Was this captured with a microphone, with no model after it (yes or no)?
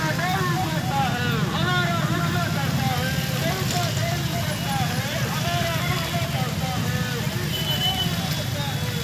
yes